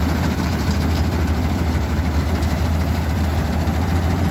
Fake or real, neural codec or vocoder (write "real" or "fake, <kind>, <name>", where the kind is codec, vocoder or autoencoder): fake, vocoder, BigVGAN v2